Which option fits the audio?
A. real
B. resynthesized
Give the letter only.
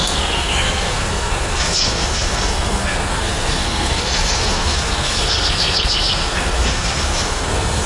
B